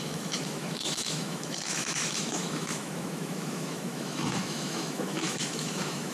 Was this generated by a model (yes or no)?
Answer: yes